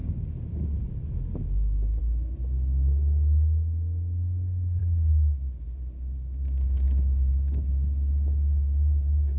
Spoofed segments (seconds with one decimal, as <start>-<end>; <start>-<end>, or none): none